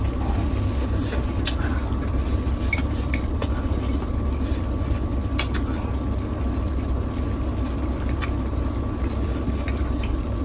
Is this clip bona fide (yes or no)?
yes